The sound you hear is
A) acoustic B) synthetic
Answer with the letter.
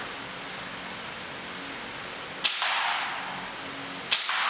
A